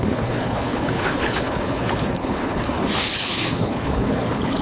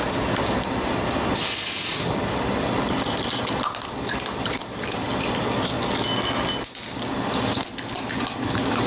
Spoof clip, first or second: first